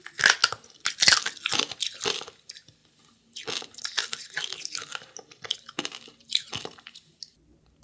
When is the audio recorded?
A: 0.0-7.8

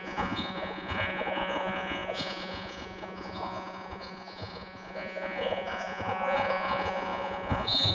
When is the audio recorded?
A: none

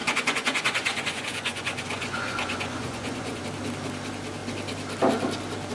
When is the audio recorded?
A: 3.4-5.7

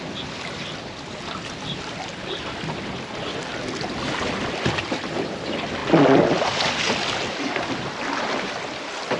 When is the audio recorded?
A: 0.0-9.2